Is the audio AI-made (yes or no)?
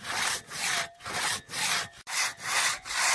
no